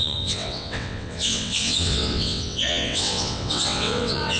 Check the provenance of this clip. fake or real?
fake